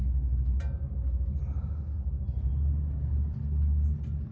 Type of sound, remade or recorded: recorded